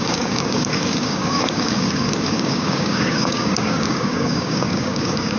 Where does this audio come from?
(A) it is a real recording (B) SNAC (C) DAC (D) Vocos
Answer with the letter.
C